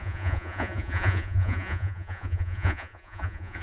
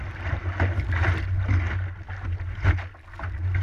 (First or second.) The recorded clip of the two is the second